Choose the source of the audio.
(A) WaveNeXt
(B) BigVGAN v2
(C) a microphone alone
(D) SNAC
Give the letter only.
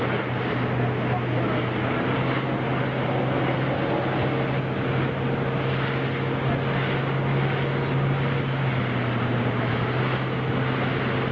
C